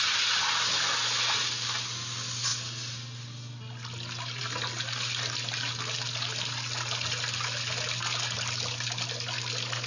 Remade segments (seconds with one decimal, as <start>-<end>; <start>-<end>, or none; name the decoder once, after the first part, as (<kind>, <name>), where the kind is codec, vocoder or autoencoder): none